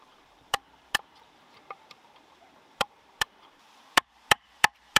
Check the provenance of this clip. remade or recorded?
remade